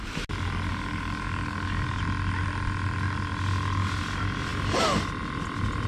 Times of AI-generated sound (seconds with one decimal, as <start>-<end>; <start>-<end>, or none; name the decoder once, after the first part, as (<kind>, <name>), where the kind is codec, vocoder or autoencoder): 0.7-2.0 (codec, DAC)